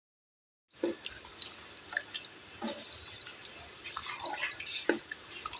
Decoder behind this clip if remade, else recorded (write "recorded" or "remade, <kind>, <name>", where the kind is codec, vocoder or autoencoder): recorded